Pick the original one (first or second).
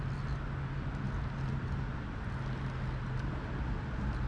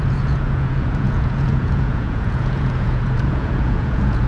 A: first